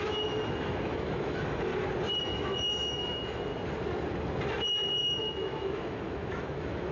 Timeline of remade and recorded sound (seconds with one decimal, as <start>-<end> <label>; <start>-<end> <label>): 0.0-1.7 remade; 1.7-2.2 recorded; 2.2-3.5 remade; 3.5-4.9 recorded; 4.9-6.9 remade